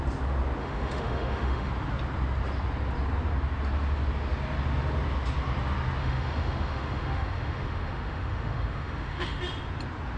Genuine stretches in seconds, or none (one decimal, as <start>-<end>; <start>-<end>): 0.0-0.6; 1.7-6.0; 9.4-10.2